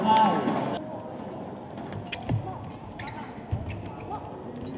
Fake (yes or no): no